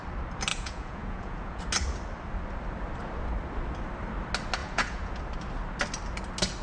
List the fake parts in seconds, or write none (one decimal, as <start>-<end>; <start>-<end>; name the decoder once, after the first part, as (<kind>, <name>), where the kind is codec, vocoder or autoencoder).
0.5-1.6 (vocoder, Vocos); 4.6-5.2